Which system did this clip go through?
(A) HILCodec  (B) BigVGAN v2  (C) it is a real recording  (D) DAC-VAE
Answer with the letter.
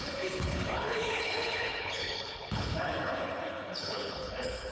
A